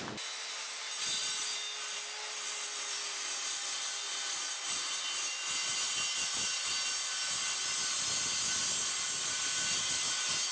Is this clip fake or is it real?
real